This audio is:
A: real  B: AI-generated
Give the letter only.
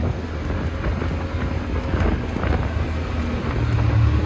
A